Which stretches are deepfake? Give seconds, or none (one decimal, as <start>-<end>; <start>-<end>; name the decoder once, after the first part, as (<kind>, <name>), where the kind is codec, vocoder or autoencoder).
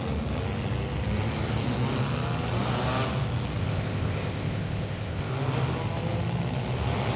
3.6-5.3 (codec, ZipCodec)